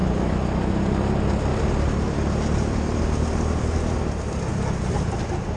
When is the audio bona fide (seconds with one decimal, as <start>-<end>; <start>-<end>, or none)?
0.0-1.5; 3.0-4.5; 5.0-5.6